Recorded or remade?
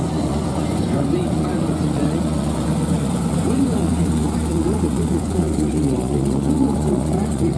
remade